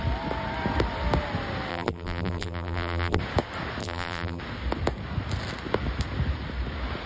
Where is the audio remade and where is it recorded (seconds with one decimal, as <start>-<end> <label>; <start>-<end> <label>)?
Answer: 0.0-1.7 recorded; 1.7-3.2 remade; 3.2-3.8 recorded; 3.8-4.4 remade; 4.4-7.1 recorded

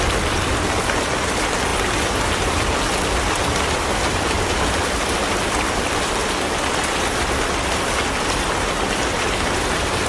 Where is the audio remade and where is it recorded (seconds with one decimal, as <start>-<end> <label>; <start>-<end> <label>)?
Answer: 0.0-6.2 remade; 6.2-8.6 recorded; 8.6-10.1 remade

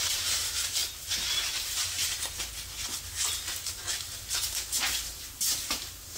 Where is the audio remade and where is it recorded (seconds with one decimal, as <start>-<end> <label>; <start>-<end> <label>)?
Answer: 0.0-2.1 remade; 2.1-5.8 recorded; 5.8-6.2 remade

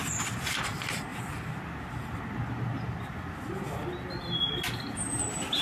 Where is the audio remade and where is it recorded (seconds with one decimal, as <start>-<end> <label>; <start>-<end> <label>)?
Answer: 0.0-5.6 recorded

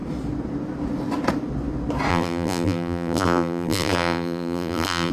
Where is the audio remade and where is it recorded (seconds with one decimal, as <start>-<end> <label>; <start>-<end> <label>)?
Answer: 0.0-2.1 recorded; 2.1-5.1 remade

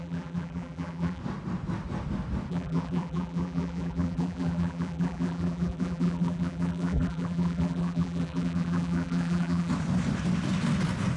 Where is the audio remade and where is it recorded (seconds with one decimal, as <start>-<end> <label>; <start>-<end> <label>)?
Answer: 0.0-1.2 remade; 1.2-2.5 recorded; 2.5-9.7 remade; 9.7-11.2 recorded

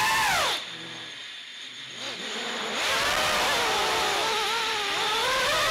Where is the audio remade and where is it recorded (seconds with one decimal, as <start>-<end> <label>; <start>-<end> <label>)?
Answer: 0.0-1.2 recorded; 1.2-2.6 remade; 2.6-3.8 recorded; 3.8-4.6 remade; 4.6-5.7 recorded